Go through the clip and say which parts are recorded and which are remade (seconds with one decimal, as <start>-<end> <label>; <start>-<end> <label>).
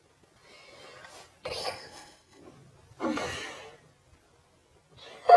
0.0-1.6 recorded; 1.6-2.4 remade; 2.4-5.4 recorded